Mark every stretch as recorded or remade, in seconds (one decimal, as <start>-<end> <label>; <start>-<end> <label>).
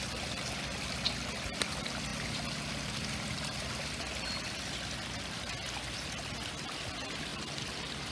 0.0-8.1 recorded